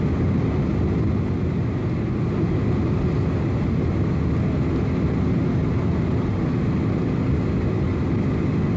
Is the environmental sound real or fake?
real